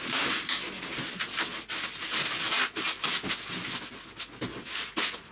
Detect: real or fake real